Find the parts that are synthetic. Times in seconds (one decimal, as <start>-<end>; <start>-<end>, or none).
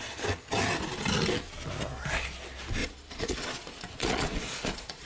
2.8-5.1